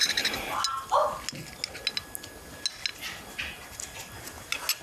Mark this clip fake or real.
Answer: real